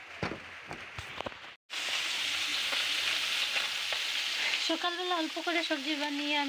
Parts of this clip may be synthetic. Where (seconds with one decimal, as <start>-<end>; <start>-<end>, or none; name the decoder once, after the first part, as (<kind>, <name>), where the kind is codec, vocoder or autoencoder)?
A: none